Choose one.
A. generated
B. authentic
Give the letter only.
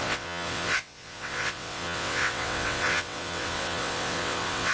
A